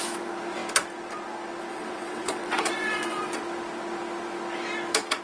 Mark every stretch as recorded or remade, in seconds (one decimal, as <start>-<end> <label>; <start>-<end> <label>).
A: 0.0-1.7 recorded; 1.7-3.4 remade; 3.4-5.2 recorded